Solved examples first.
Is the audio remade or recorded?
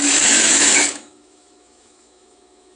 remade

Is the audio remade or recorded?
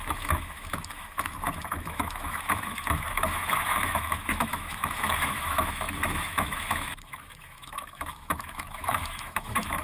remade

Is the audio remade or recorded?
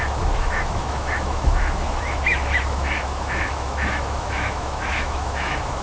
remade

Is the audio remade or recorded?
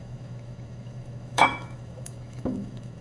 remade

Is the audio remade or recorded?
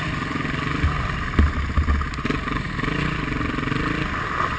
recorded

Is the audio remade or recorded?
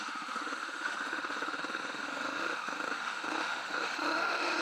remade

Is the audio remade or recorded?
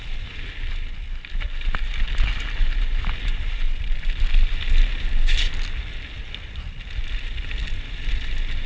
recorded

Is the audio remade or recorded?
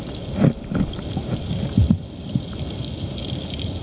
recorded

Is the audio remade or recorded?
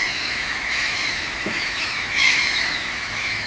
remade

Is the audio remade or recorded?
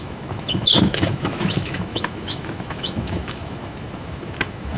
remade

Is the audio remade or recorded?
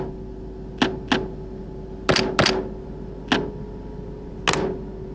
recorded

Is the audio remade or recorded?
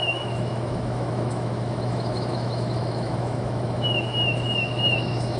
remade